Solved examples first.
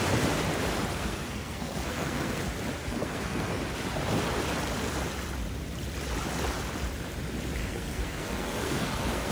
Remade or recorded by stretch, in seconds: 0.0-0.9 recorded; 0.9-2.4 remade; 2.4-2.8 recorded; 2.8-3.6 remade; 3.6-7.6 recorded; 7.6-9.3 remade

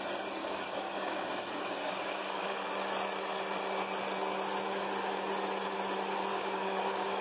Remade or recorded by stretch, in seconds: 0.0-0.4 recorded; 0.4-2.7 remade; 2.7-6.3 recorded; 6.3-7.2 remade

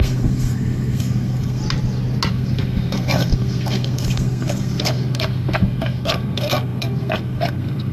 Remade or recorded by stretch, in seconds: 0.0-1.6 remade; 1.6-2.3 recorded; 2.3-7.9 remade

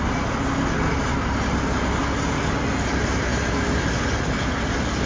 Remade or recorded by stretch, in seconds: 0.0-5.1 recorded

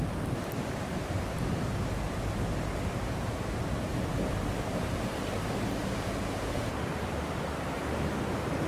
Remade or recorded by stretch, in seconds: 0.0-7.8 remade; 7.8-8.7 recorded

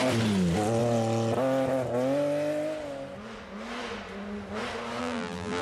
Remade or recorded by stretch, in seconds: 0.0-5.0 recorded; 5.0-5.6 remade

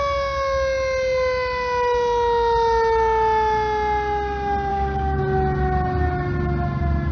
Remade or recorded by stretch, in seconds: 0.0-4.7 recorded; 4.7-5.2 remade; 5.2-7.1 recorded